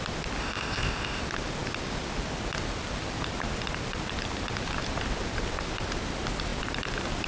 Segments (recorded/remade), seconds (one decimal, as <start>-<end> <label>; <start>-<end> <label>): 0.0-0.4 recorded; 0.4-1.2 remade; 1.2-7.3 recorded